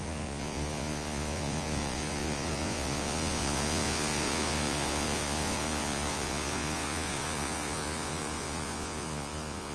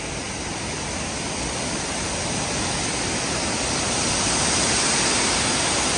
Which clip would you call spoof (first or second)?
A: first